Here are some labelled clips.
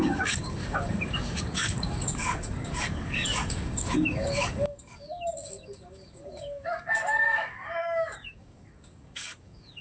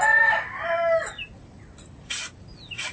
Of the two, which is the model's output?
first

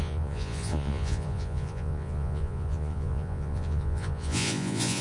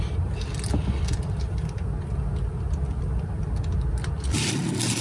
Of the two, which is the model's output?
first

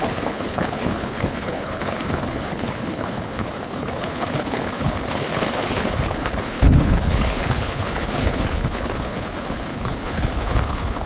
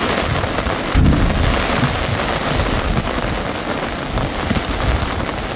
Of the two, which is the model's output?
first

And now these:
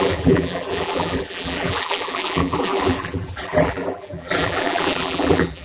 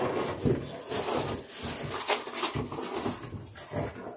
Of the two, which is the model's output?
first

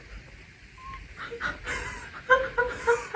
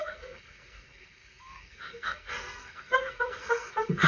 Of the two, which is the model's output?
second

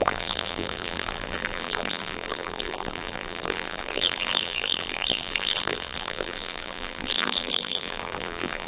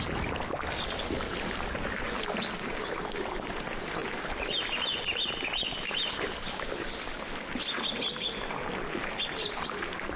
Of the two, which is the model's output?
first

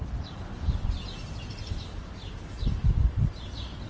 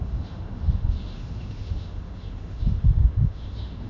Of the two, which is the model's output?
second